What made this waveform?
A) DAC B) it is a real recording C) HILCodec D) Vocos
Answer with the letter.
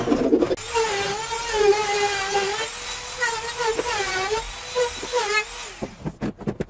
B